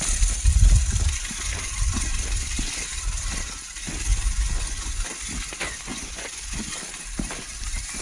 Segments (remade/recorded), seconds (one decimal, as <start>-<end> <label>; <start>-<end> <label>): 0.0-4.1 recorded; 4.1-5.0 remade; 5.0-5.9 recorded; 5.9-6.7 remade; 6.7-8.0 recorded